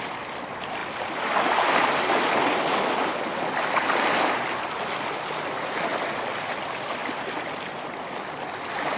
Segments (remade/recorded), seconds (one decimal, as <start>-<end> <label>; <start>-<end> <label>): 0.0-9.0 recorded

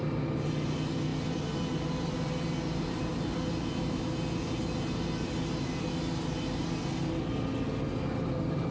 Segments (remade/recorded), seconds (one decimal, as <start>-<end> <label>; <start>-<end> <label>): 0.0-8.7 recorded

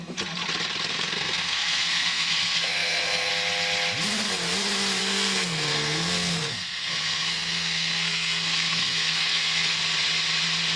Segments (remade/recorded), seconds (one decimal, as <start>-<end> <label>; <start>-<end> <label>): 0.0-0.9 recorded; 0.9-3.3 remade; 3.3-5.0 recorded; 5.0-9.8 remade; 9.8-10.8 recorded

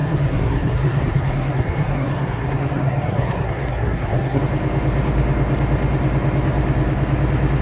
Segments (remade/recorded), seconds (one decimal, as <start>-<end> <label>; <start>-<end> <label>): 0.0-4.4 remade; 4.4-7.6 recorded

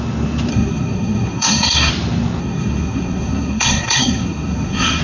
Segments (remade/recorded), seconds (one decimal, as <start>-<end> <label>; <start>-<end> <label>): 0.0-0.5 recorded; 0.5-1.9 remade; 1.9-2.4 recorded; 2.4-5.0 remade

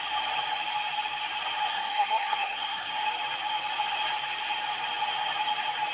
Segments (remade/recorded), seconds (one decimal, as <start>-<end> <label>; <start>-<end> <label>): 0.0-1.7 recorded; 1.7-2.9 remade; 2.9-5.9 recorded